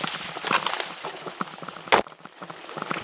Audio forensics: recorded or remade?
recorded